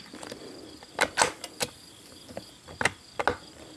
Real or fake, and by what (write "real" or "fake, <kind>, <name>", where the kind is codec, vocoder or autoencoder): real